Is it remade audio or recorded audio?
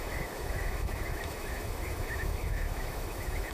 remade